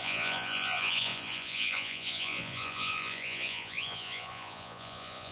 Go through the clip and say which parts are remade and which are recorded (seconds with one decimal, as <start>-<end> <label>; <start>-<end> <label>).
0.0-5.3 remade